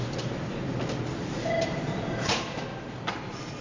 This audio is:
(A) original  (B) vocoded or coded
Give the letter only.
A